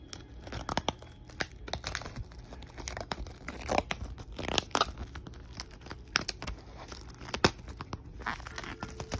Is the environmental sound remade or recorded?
recorded